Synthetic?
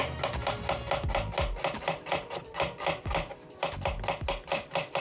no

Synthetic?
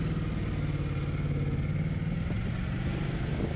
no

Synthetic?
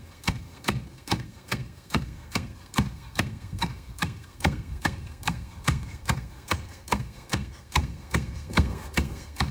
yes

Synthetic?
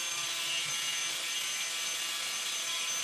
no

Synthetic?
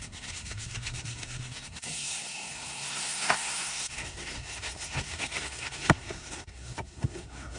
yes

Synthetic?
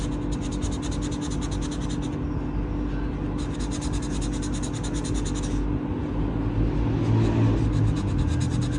no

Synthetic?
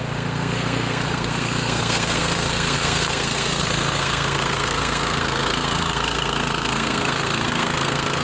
yes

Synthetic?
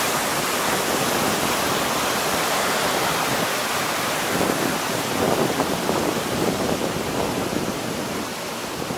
no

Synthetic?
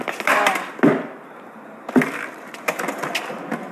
no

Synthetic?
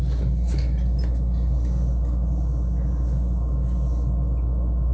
no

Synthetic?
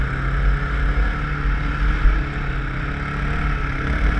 no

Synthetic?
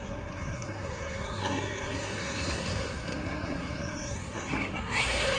yes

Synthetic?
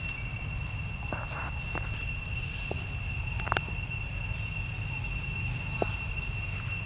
no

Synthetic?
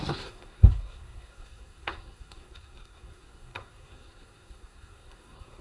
yes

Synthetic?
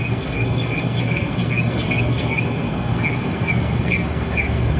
yes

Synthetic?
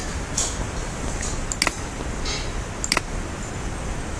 no